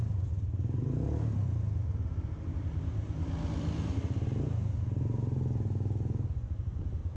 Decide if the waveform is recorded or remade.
recorded